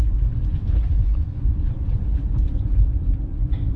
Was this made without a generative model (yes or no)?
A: no